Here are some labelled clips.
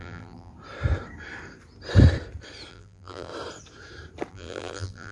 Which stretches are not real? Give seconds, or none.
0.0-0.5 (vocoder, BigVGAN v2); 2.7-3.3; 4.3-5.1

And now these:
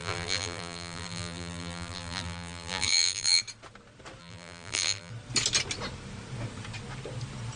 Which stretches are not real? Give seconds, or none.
0.0-3.4 (vocoder, BigVGAN v2); 4.2-5.1

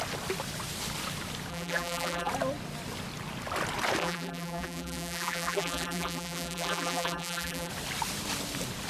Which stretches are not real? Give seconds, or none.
1.5-2.3 (vocoder, BigVGAN v2); 4.0-7.7

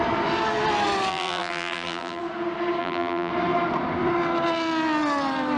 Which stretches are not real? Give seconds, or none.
1.1-2.2 (vocoder, BigVGAN v2); 2.8-3.3

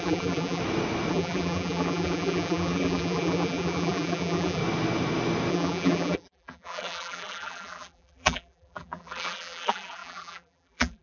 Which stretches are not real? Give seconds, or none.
0.0-0.6 (vocoder, BigVGAN v2); 1.1-4.6; 5.5-11.0

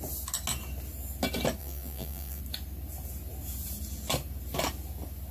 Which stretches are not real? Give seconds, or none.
1.6-2.4 (vocoder, BigVGAN v2)

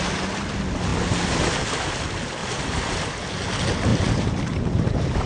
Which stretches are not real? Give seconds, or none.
2.4-3.1 (vocoder, BigVGAN v2); 3.9-5.3

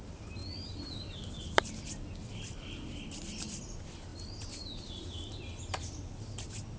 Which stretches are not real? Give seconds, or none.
none